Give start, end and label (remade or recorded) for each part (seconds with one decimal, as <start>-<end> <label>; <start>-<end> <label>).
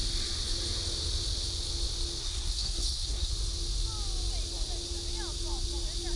0.0-2.2 recorded; 2.2-3.3 remade; 3.3-6.2 recorded